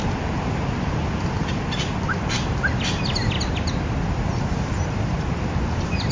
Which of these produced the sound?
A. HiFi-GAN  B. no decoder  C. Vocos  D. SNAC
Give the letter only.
B